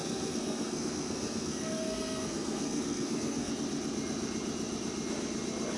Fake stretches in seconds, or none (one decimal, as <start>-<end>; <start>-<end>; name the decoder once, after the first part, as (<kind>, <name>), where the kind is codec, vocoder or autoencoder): 0.0-3.5 (codec, SNAC)